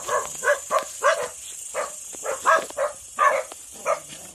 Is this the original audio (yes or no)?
yes